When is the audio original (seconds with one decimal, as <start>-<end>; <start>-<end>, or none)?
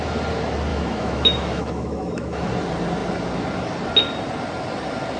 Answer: 0.0-0.7; 2.5-5.2